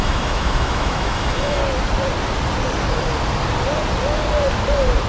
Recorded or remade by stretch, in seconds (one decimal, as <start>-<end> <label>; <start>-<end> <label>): 0.0-1.6 remade; 1.6-5.1 recorded